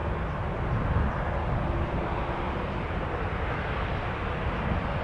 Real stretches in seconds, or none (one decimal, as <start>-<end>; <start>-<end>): 0.0-5.0